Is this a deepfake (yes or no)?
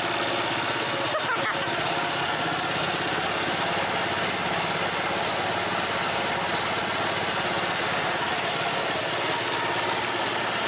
no